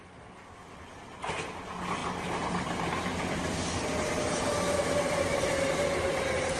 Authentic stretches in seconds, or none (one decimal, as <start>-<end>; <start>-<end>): 0.0-6.6